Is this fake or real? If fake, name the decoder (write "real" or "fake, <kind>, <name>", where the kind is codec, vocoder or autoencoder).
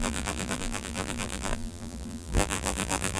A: fake, vocoder, BigVGAN v2